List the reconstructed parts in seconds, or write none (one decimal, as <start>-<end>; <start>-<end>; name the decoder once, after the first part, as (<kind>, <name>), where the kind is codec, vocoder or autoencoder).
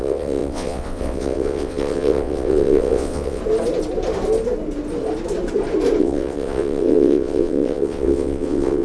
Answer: 0.0-3.4 (vocoder, WaveNeXt); 6.0-8.8